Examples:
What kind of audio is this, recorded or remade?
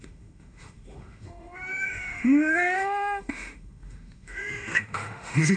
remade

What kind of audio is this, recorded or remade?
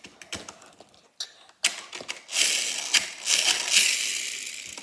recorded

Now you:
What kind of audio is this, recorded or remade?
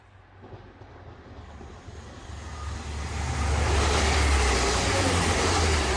recorded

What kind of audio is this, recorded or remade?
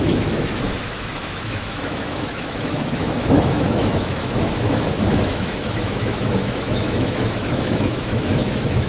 remade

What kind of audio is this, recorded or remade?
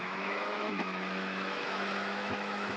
remade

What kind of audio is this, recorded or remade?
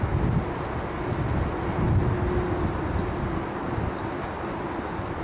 recorded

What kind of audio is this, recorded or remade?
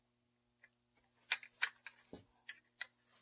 recorded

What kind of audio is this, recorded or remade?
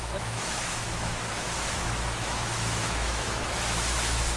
remade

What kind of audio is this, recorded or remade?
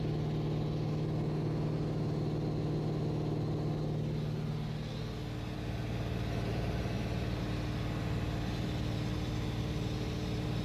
recorded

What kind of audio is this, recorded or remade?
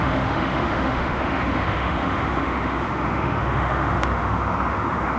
remade